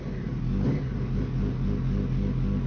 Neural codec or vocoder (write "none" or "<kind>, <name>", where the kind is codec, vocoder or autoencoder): none